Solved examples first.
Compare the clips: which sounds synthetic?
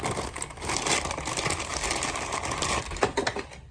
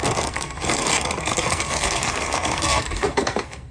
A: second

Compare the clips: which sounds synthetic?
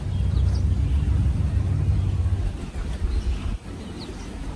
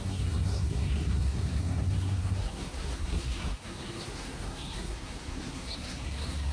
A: second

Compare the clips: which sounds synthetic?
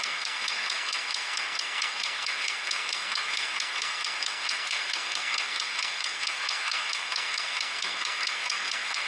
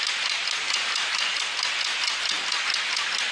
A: first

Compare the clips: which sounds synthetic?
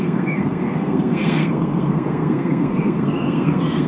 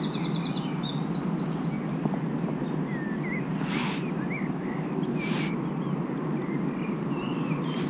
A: first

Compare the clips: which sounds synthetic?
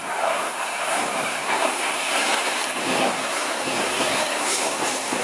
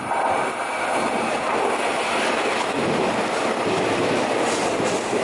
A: first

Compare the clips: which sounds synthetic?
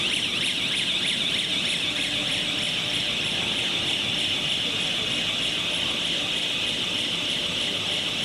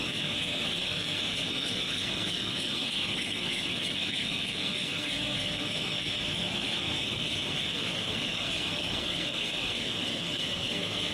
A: second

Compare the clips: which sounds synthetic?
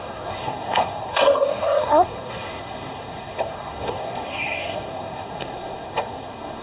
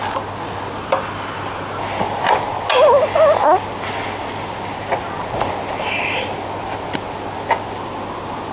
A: first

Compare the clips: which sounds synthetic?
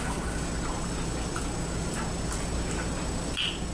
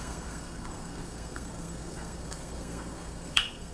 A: second